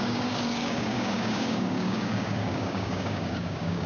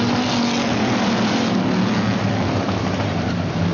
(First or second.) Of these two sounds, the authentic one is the second